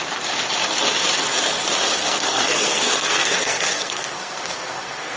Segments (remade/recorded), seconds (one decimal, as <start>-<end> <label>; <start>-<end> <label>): 0.0-2.0 recorded; 2.0-5.2 remade